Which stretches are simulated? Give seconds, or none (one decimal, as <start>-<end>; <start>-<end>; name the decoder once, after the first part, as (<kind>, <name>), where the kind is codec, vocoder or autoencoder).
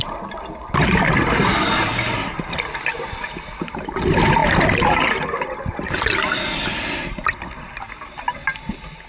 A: none